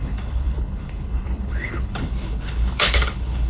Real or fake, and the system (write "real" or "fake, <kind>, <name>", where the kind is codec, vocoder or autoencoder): fake, codec, HILCodec